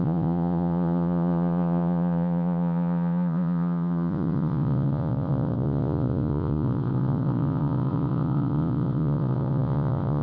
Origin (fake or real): fake